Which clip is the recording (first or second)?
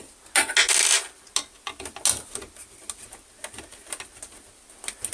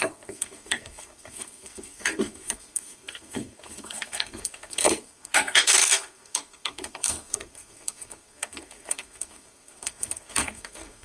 first